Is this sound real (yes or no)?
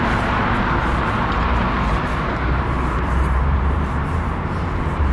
no